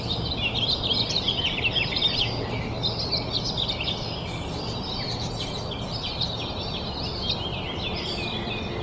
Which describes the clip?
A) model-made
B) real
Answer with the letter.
B